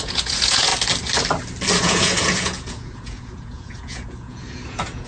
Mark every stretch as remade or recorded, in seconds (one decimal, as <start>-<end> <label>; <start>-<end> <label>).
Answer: 0.0-0.7 remade; 0.7-1.8 recorded; 1.8-5.1 remade